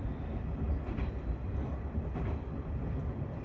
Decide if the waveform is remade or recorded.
recorded